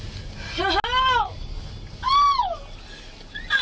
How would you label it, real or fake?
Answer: real